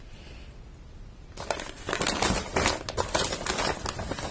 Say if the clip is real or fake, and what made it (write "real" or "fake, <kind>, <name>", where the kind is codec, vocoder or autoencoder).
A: real